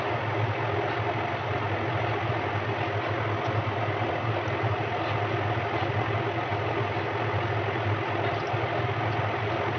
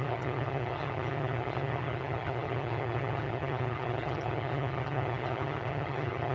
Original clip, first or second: first